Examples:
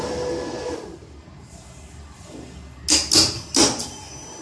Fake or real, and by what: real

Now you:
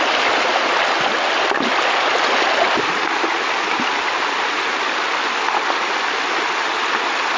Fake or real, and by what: real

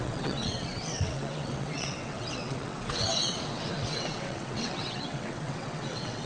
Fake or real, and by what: fake, vocoder, WaveNeXt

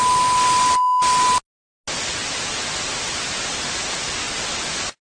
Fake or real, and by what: real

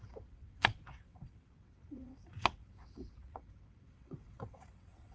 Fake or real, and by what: fake, vocoder, WaveNeXt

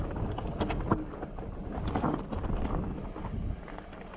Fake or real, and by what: real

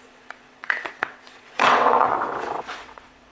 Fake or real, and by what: fake, vocoder, WaveNeXt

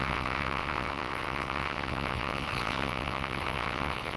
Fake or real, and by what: fake, vocoder, WaveNeXt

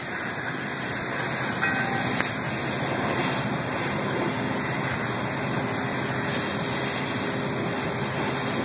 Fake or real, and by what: real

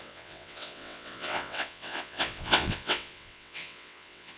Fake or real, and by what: fake, vocoder, WaveNeXt